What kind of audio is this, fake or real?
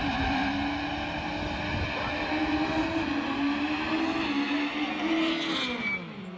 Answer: real